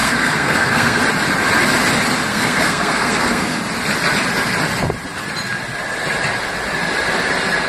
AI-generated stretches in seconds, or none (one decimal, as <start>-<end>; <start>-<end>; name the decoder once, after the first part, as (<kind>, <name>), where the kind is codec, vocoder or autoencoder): 0.0-1.0 (codec, SNAC); 2.3-3.6